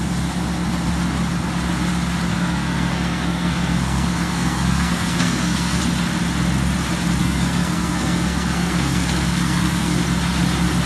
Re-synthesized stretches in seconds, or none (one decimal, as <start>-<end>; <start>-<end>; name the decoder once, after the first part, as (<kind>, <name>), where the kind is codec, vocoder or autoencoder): 2.3-5.8 (codec, SNAC); 7.2-10.0